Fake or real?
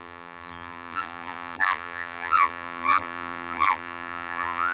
fake